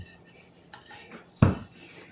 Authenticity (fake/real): real